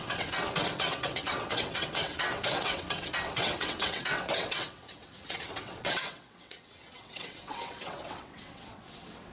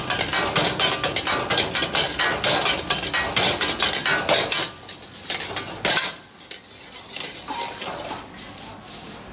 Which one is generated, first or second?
first